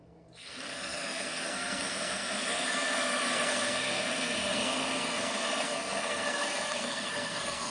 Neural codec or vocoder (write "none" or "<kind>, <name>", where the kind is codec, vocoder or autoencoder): codec, SNAC